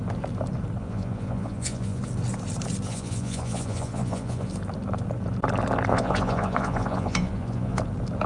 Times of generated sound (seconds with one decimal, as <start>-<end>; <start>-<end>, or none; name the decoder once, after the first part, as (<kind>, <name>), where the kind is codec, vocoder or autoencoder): 0.8-2.0 (vocoder, Vocos); 2.9-4.5; 5.9-7.8